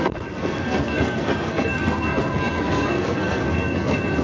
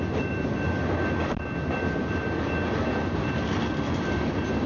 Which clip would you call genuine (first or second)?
second